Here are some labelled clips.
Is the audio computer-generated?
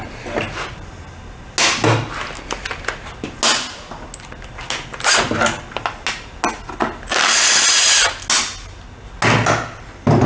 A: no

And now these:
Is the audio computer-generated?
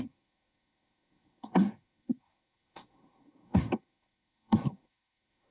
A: yes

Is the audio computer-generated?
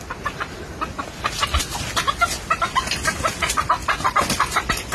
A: no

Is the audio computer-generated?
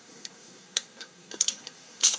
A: yes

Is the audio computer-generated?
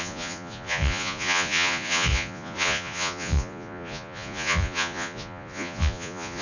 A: yes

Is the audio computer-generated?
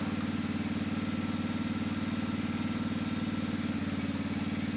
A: no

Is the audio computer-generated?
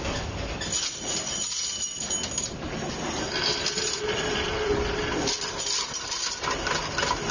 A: no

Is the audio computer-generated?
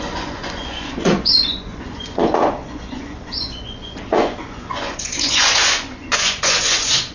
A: yes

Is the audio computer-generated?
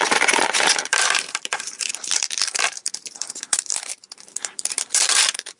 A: yes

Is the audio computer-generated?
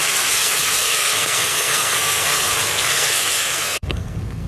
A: yes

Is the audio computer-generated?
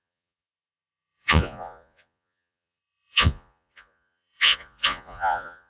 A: yes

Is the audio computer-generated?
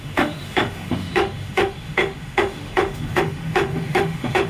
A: yes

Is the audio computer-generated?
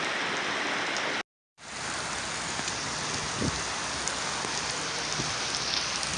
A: no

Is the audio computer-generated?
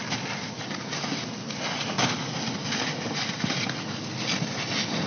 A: yes